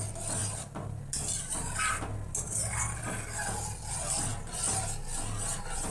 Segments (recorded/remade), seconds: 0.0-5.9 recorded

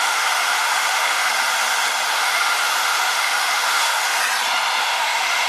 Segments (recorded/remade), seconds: 0.0-1.3 remade; 1.3-2.1 recorded; 2.1-4.2 remade; 4.2-4.8 recorded; 4.8-5.5 remade

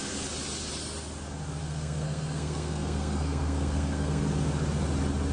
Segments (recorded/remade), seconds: 0.0-1.6 recorded; 1.6-4.2 remade; 4.2-5.3 recorded

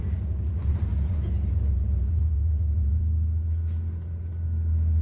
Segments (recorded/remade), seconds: 0.0-0.9 recorded; 0.9-3.0 remade; 3.0-5.0 recorded

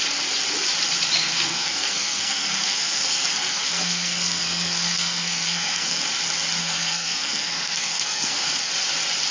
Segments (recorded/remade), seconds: 0.0-1.2 recorded; 1.2-6.0 remade; 6.0-6.6 recorded; 6.6-8.7 remade; 8.7-9.3 recorded

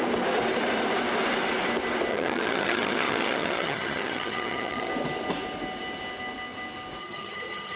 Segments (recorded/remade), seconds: 0.0-2.1 recorded; 2.1-4.9 remade; 4.9-7.0 recorded; 7.0-7.8 remade

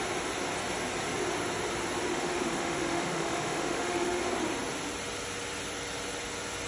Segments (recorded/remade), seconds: 0.0-2.1 recorded; 2.1-4.2 remade; 4.2-6.7 recorded